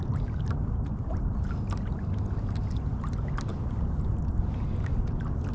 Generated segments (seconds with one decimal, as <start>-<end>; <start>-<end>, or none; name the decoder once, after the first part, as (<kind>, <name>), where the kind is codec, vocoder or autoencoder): none